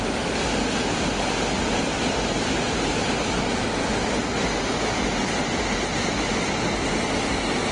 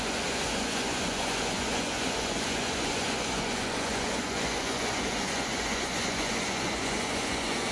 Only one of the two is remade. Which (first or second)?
second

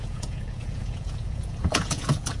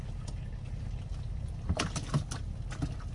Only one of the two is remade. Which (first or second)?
first